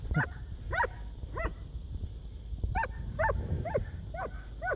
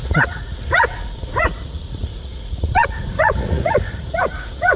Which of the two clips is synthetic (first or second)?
second